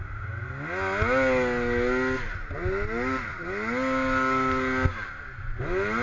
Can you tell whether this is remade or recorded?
recorded